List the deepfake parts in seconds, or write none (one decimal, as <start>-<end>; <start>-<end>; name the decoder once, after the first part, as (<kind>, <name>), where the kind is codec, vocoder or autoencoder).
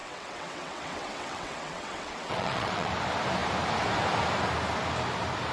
0.0-2.9 (vocoder, WaveNeXt)